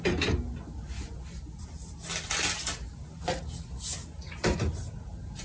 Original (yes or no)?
yes